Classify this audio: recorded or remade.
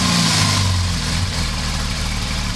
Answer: recorded